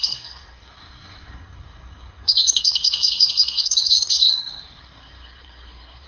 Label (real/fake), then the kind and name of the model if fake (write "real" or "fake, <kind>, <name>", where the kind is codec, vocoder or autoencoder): fake, codec, SNAC